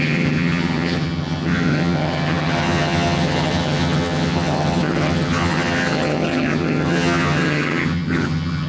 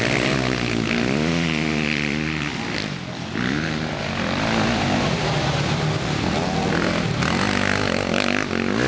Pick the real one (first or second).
second